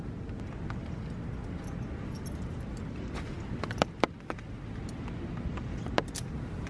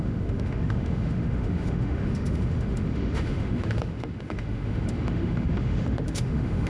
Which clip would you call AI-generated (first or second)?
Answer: second